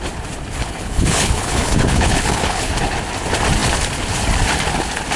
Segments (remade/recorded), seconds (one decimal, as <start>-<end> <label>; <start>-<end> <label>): 0.0-0.6 recorded; 0.6-2.7 remade; 2.7-5.2 recorded